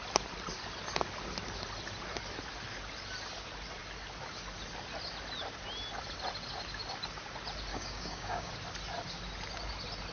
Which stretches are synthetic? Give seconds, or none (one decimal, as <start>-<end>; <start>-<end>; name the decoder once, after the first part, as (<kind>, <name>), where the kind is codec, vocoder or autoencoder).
7.7-8.5 (codec, DAC)